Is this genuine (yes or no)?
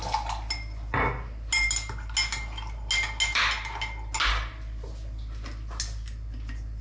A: yes